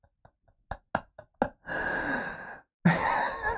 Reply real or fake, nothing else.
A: real